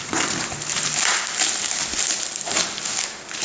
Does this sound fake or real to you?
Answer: real